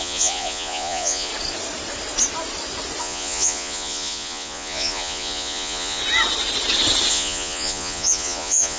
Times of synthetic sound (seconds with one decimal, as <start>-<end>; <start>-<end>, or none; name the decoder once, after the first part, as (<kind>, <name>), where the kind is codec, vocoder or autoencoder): 0.0-1.3 (vocoder, Vocos); 3.0-6.0; 7.1-8.8